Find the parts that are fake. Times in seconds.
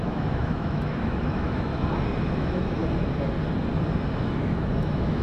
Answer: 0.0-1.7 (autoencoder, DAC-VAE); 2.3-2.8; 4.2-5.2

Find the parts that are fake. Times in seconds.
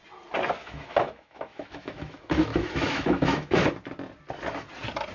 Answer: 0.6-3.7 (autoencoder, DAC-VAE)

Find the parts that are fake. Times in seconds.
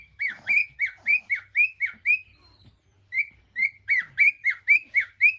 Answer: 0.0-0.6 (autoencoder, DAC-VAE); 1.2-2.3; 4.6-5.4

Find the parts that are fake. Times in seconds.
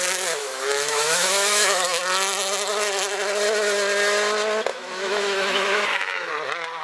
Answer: 0.4-2.0 (autoencoder, DAC-VAE); 4.7-6.3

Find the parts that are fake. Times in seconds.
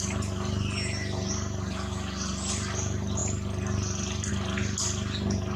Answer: none